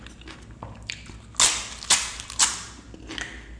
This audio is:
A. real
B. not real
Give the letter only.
A